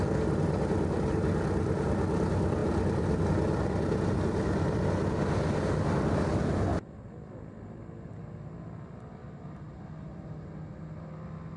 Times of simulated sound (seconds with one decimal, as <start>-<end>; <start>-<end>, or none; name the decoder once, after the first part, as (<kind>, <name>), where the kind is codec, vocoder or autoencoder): none

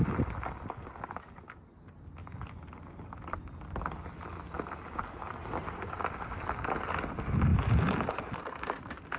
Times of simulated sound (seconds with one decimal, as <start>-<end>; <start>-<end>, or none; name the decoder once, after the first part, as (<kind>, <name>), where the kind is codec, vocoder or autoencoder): 7.5-8.3 (vocoder, BigVGAN v2)